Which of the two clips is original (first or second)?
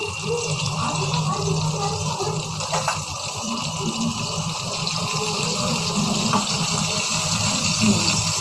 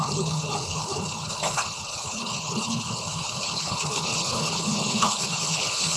first